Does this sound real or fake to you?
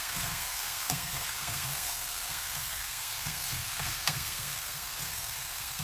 fake